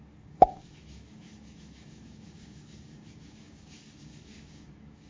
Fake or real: fake